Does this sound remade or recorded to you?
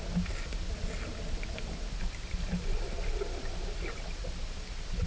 recorded